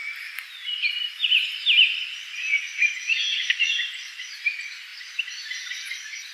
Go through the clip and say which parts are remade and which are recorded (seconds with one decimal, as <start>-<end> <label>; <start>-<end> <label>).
0.0-1.2 recorded; 1.2-3.1 remade; 3.1-6.3 recorded